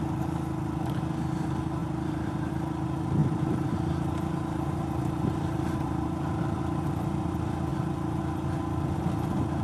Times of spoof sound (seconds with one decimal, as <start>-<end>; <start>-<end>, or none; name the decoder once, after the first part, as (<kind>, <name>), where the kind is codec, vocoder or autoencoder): 1.8-2.5 (vocoder, BigVGAN v2); 3.2-6.6; 7.7-8.2